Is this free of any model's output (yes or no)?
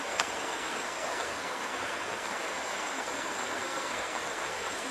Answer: no